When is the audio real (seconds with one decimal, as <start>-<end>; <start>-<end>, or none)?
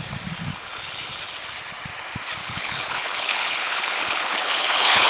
0.0-0.5; 1.2-2.4